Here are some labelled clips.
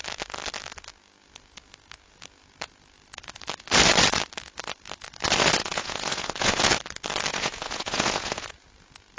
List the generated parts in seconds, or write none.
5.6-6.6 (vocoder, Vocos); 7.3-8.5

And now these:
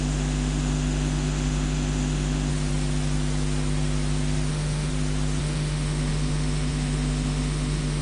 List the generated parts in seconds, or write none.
0.0-2.5 (autoencoder, DAC-VAE); 4.5-4.9; 5.4-8.0

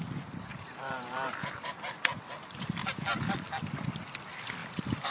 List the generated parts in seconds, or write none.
0.5-1.8 (vocoder, BigVGAN v2); 4.6-5.1